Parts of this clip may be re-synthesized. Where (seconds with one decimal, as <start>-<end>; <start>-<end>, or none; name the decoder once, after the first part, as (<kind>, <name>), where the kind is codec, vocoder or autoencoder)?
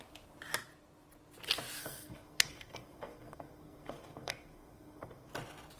1.8-5.3 (codec, SNAC)